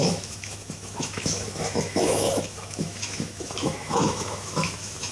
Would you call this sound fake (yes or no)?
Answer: yes